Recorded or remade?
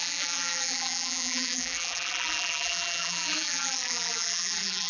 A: remade